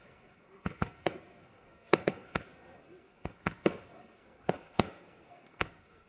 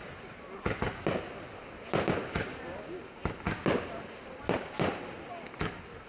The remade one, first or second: first